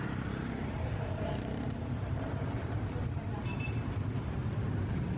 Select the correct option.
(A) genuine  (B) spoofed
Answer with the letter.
B